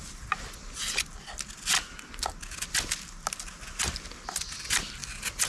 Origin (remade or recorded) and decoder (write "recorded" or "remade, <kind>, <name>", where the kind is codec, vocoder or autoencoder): recorded